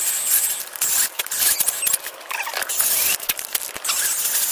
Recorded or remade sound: recorded